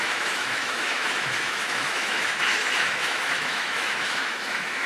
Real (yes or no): no